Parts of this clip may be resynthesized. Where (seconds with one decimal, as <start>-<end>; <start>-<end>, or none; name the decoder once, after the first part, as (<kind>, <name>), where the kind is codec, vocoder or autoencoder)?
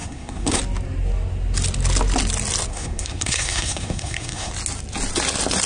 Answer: 0.0-0.6 (codec, SNAC); 2.7-4.5